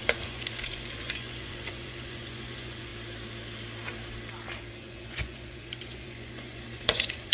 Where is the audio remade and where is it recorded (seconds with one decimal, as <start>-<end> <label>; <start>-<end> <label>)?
0.0-2.9 remade; 2.9-4.8 recorded; 4.8-7.3 remade